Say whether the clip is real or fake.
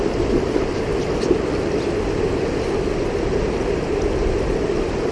real